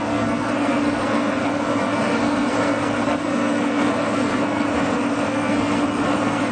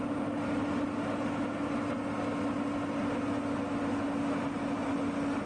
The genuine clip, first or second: second